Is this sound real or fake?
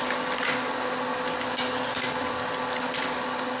real